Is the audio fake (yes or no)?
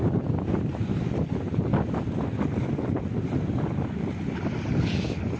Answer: no